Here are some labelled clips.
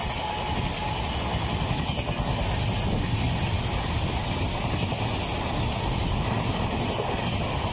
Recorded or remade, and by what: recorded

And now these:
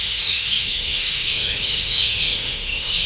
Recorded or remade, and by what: remade, autoencoder, DAC-VAE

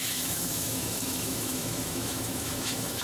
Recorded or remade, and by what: remade, autoencoder, DAC-VAE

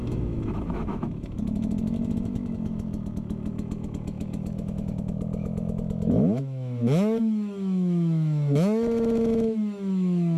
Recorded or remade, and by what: remade, autoencoder, DAC-VAE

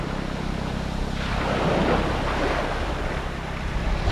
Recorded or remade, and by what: recorded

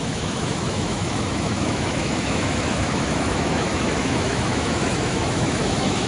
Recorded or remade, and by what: remade, autoencoder, DAC-VAE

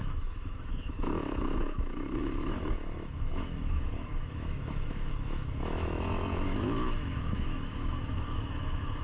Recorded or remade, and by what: remade, autoencoder, DAC-VAE